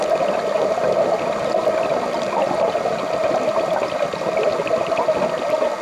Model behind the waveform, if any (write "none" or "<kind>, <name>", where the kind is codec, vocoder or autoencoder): none